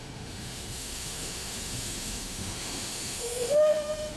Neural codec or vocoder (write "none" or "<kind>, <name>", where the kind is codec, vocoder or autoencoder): autoencoder, DAC-VAE